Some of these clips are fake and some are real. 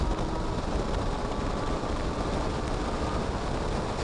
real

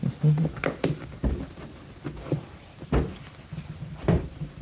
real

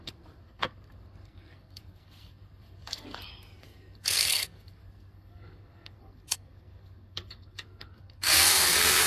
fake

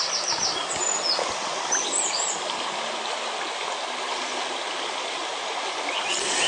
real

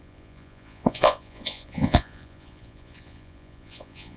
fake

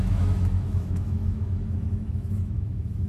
fake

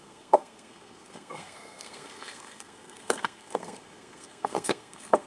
fake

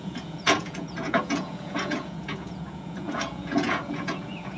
fake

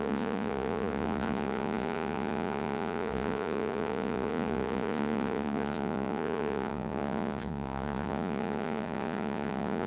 fake